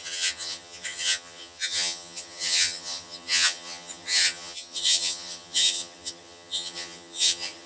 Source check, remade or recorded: remade